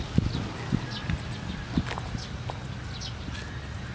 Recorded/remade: recorded